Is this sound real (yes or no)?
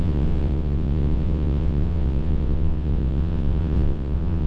no